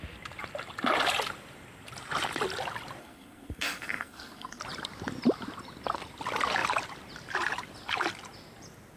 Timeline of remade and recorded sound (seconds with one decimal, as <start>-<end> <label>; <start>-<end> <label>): 0.0-3.0 recorded; 3.0-4.6 remade; 4.6-9.0 recorded